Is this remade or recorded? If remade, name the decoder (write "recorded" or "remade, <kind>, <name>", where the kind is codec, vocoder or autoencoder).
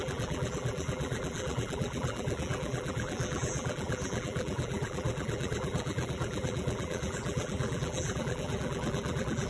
remade, vocoder, BigVGAN v2